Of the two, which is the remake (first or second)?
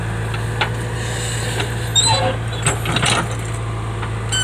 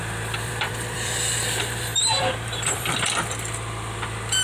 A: second